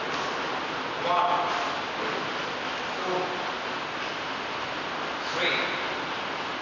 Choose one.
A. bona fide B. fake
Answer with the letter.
A